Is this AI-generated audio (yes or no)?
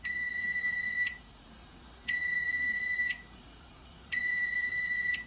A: yes